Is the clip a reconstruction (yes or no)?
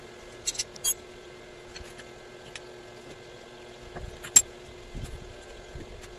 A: no